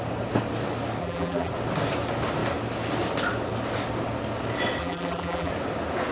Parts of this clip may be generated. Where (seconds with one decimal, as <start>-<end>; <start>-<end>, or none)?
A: 1.0-1.5; 4.8-5.5